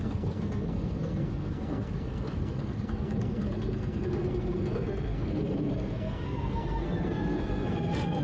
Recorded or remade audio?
remade